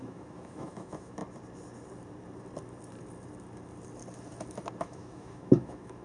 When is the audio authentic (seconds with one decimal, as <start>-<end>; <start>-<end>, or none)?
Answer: 1.2-4.8